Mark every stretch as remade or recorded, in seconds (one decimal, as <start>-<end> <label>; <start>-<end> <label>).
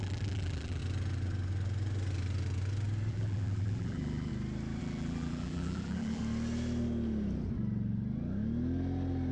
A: 0.0-0.8 remade; 0.8-3.1 recorded; 3.1-4.3 remade; 4.3-4.8 recorded; 4.8-6.2 remade; 6.2-9.3 recorded